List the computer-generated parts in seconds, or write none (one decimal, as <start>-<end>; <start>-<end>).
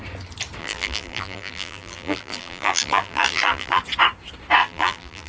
0.6-3.8; 4.6-5.3